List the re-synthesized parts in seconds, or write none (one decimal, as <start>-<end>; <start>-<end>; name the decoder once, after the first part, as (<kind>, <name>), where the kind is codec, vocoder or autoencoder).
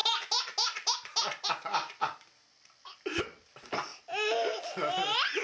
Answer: none